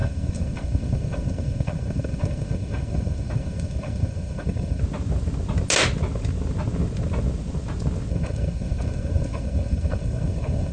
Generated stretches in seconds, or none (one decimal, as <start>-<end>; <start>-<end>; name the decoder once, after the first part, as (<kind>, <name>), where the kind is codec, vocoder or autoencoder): 0.0-4.8 (codec, SNAC); 8.1-10.7